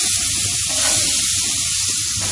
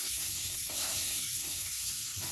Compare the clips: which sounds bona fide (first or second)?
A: first